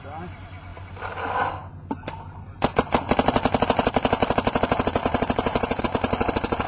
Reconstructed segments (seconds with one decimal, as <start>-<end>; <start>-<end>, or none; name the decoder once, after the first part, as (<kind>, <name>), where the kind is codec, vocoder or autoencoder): 5.0-5.8 (vocoder, BigVGAN v2)